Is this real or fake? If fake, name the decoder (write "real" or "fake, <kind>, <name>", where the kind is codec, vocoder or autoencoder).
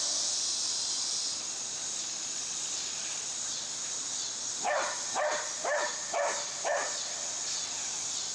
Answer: real